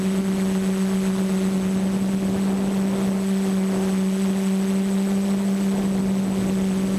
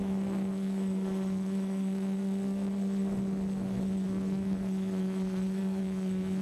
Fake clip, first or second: second